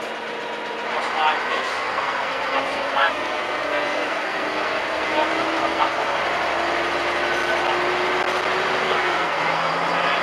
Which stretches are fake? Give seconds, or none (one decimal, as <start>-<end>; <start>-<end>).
1.5-6.2; 8.8-9.7